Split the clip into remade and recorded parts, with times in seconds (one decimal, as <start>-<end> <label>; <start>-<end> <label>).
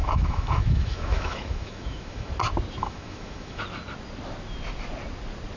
0.0-2.3 remade; 2.3-2.8 recorded; 2.8-3.6 remade; 3.6-5.6 recorded